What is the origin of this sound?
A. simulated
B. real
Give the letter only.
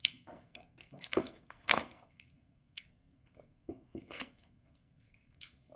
A